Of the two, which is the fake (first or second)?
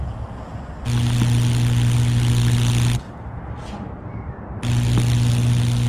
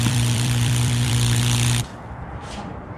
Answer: second